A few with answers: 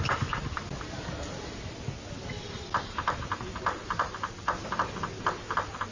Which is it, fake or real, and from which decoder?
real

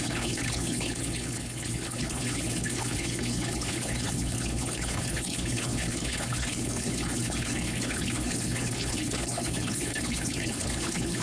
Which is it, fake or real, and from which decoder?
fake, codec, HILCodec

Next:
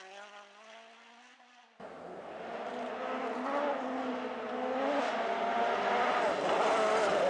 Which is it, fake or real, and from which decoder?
real